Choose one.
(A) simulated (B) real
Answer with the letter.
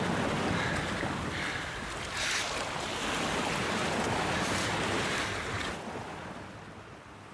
B